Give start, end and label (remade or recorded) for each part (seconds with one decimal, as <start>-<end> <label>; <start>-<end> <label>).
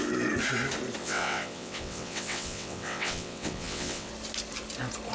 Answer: 0.0-1.0 recorded; 1.0-4.1 remade; 4.1-5.1 recorded